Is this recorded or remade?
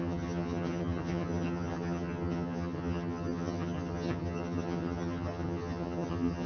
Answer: remade